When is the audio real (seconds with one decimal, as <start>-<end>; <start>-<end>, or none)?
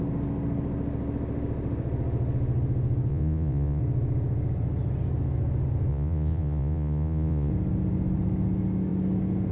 0.0-3.1; 3.8-5.9; 7.5-9.5